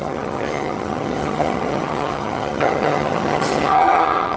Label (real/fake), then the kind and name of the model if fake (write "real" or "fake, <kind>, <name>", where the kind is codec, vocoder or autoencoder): fake, vocoder, HiFi-GAN